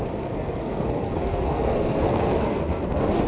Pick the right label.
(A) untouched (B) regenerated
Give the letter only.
B